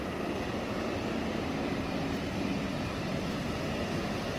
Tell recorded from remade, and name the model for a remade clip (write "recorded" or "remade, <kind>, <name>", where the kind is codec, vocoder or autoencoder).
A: recorded